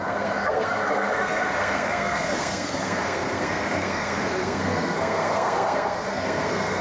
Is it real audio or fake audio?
fake